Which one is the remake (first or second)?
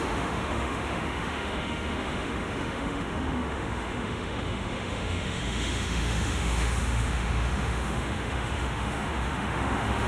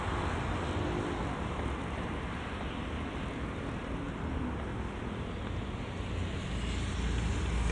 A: first